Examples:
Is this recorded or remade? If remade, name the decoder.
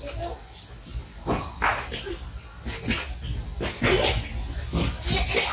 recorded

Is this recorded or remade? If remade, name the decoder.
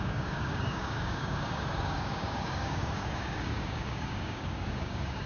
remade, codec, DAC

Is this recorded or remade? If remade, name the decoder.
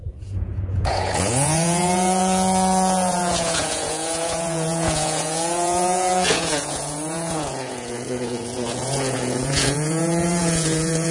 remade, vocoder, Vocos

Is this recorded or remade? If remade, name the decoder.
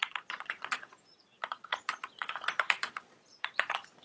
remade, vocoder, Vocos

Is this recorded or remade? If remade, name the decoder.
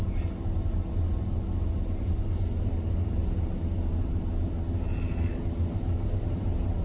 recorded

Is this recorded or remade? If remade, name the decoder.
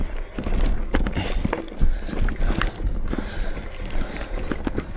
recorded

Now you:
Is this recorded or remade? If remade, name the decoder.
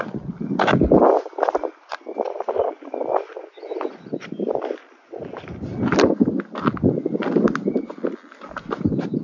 recorded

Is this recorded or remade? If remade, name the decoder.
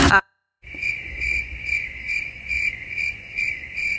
remade, vocoder, Vocos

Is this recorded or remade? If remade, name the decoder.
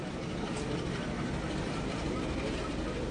recorded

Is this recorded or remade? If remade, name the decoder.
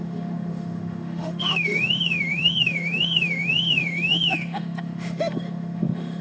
remade, autoencoder, DAC-VAE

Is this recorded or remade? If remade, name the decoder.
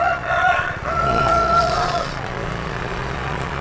remade, vocoder, Vocos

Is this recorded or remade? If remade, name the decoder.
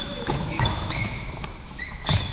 remade, autoencoder, DAC-VAE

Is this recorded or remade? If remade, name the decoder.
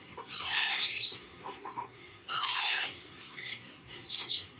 remade, codec, SNAC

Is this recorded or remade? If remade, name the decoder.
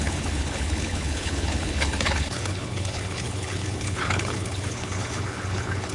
remade, codec, HILCodec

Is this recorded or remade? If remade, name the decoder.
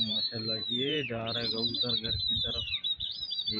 remade, vocoder, BigVGAN v2